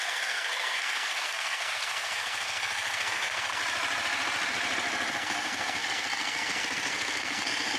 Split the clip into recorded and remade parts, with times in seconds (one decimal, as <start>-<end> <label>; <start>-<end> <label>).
0.0-3.6 remade; 3.6-5.1 recorded; 5.1-7.8 remade

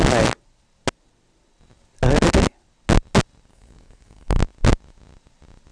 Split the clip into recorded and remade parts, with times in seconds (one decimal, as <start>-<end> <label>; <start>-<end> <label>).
0.0-3.5 recorded; 3.5-4.4 remade; 4.4-5.7 recorded

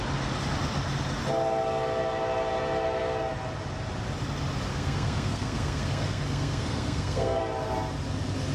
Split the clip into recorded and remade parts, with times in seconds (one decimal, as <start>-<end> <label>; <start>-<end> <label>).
0.0-4.7 recorded; 4.7-7.4 remade; 7.4-8.5 recorded